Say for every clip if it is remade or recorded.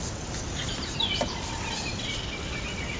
recorded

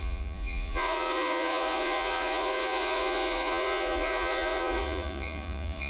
remade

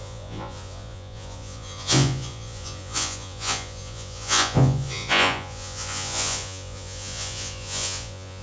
remade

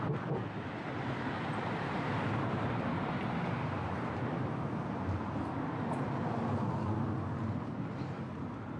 recorded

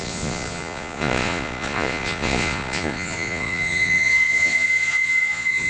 remade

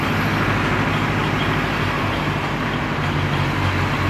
recorded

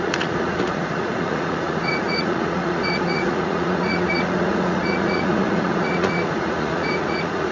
remade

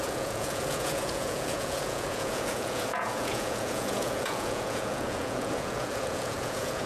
remade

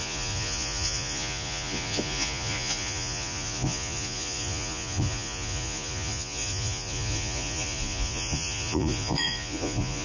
remade